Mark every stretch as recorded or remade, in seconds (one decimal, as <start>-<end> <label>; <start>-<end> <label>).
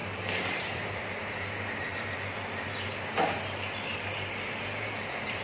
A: 0.0-5.4 remade